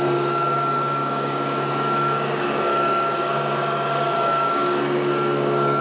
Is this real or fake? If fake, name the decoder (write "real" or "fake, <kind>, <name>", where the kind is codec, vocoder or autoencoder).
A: fake, codec, DAC